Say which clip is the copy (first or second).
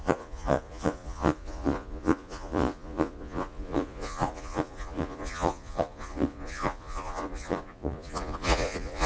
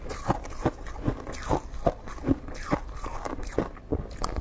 first